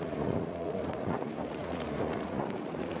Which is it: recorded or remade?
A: remade